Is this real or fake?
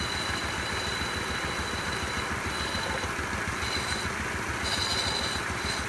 real